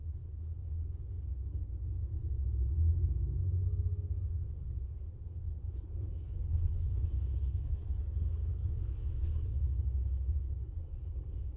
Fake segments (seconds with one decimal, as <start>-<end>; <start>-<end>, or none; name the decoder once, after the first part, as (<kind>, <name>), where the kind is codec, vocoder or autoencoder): 0.0-2.1 (codec, HILCodec); 4.3-11.6